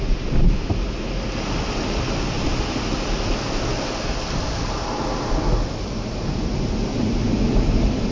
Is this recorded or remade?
recorded